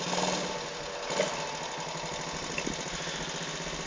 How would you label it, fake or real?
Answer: real